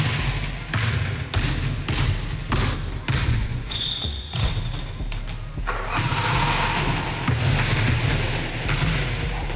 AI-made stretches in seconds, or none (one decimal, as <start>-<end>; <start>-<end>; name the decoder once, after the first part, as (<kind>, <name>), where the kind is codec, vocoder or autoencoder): 3.2-4.5 (vocoder, Vocos)